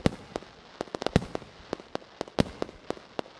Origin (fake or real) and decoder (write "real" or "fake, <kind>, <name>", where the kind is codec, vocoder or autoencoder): real